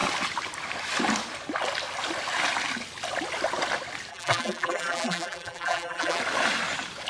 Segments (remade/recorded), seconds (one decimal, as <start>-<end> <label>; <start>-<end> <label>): 0.0-4.1 recorded; 4.1-6.2 remade; 6.2-7.1 recorded